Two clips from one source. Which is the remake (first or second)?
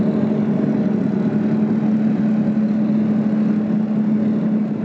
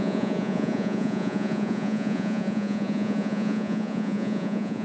second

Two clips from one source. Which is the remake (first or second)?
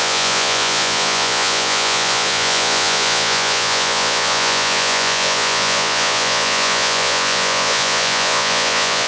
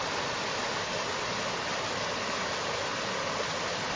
first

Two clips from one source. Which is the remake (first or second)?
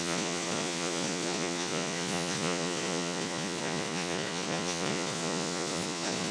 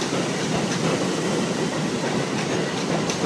first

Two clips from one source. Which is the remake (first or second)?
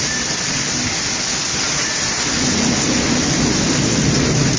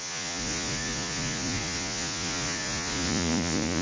second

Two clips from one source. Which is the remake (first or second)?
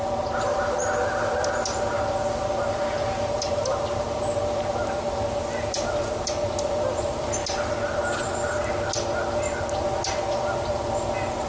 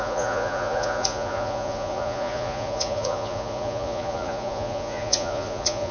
second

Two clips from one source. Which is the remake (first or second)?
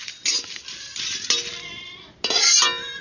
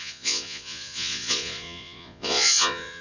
second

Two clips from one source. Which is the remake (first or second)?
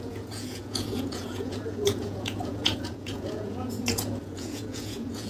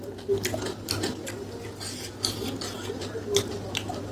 first